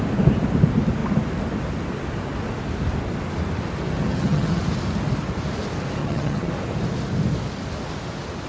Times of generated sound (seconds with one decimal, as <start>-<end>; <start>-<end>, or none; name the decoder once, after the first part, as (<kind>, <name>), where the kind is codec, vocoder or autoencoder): 4.0-4.6 (vocoder, HiFi-GAN); 6.0-6.5